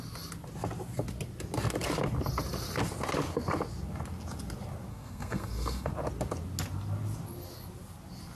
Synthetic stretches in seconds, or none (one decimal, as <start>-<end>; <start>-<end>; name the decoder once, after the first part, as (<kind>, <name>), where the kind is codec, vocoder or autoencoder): 4.9-5.9 (codec, SNAC)

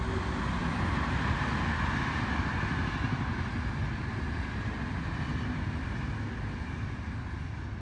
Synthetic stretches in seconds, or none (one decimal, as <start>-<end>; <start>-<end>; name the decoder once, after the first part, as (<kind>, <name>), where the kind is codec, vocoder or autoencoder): none